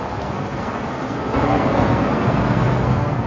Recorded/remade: remade